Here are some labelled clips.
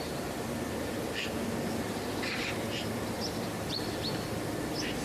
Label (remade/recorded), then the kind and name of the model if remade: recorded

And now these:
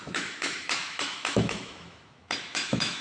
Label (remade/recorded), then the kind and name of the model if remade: remade, autoencoder, DAC-VAE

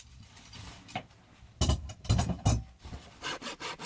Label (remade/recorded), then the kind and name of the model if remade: recorded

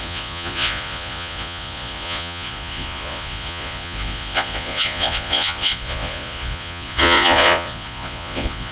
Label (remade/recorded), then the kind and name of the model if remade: remade, vocoder, Vocos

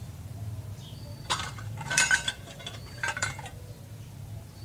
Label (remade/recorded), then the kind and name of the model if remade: remade, vocoder, BigVGAN v2